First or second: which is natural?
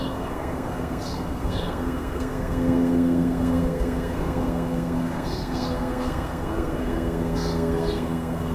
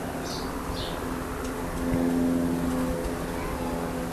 second